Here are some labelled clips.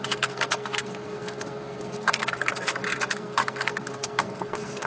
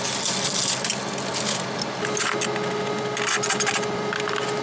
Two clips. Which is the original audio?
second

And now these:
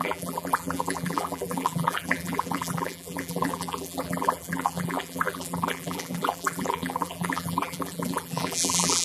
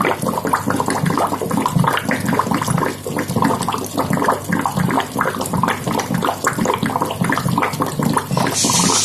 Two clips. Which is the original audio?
second